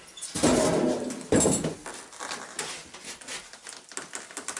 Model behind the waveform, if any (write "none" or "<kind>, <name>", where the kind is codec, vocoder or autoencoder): none